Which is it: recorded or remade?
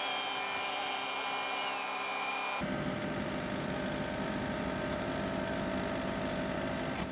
recorded